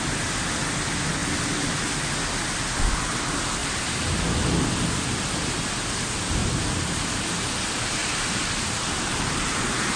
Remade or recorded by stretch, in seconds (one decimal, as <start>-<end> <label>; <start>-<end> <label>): 0.0-3.6 recorded; 3.6-4.2 remade; 4.2-6.4 recorded; 6.4-6.9 remade; 6.9-8.0 recorded; 8.0-9.6 remade; 9.6-10.0 recorded